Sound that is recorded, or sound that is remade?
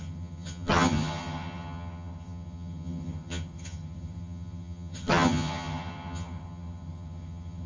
remade